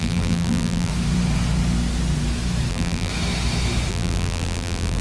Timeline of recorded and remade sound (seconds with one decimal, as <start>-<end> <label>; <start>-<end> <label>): 0.0-0.9 remade; 0.9-2.7 recorded; 2.7-3.1 remade; 3.1-3.9 recorded; 3.9-5.0 remade